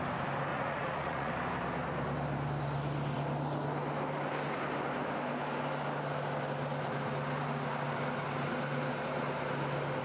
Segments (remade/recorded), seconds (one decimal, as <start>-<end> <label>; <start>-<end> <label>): 0.0-0.5 recorded; 0.5-1.3 remade; 1.3-10.0 recorded